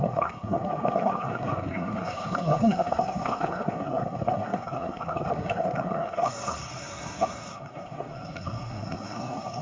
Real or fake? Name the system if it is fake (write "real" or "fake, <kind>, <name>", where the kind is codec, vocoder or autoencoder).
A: fake, codec, SNAC